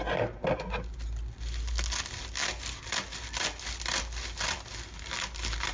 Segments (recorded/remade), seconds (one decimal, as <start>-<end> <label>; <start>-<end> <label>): 0.0-5.7 recorded